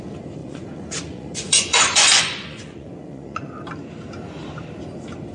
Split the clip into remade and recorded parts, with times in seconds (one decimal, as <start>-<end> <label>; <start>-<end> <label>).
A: 0.0-0.4 recorded; 0.4-3.6 remade; 3.6-5.3 recorded